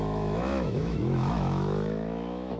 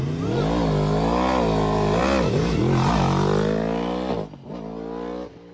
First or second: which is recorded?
second